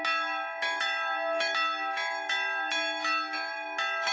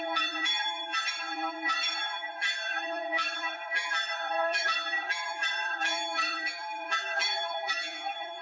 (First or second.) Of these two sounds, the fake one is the second